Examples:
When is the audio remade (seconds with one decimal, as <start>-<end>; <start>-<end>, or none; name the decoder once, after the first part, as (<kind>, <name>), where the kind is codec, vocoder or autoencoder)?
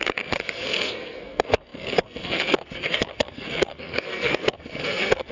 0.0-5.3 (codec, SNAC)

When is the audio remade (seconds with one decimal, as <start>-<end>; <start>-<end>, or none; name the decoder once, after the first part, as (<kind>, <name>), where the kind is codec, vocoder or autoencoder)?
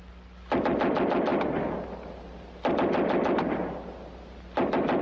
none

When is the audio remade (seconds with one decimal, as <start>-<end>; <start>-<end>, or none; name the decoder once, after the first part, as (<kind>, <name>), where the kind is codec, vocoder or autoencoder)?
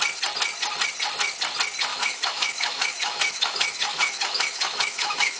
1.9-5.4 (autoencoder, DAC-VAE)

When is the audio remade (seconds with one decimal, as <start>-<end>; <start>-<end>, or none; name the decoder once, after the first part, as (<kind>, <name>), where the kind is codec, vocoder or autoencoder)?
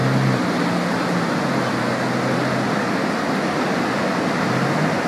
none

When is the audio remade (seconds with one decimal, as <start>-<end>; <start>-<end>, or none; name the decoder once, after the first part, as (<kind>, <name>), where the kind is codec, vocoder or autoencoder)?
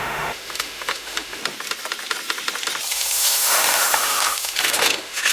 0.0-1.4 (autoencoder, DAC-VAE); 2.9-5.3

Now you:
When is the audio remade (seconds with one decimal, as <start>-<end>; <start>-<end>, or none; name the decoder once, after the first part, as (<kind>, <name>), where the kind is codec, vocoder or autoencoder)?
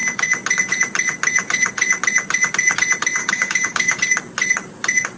3.2-4.0 (codec, DAC)